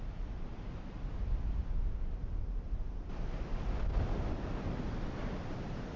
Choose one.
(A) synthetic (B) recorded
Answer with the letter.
B